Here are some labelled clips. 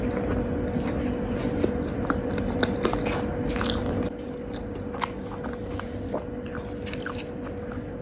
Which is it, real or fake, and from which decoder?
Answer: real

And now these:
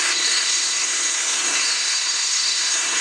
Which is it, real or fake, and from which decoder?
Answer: fake, codec, SNAC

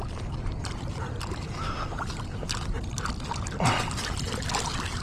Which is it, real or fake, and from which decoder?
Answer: real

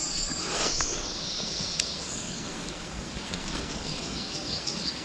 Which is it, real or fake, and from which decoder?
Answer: fake, codec, SNAC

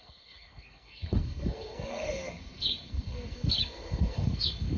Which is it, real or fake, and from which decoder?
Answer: fake, codec, SNAC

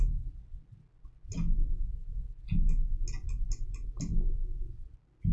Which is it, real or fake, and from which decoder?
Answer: real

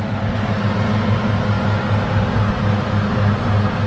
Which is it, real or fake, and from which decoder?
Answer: real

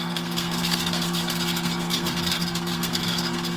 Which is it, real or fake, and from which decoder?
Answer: fake, codec, SNAC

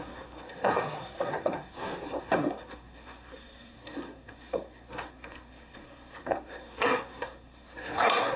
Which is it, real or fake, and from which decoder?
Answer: fake, codec, SNAC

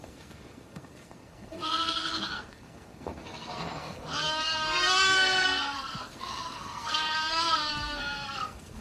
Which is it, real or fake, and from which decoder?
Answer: fake, codec, SNAC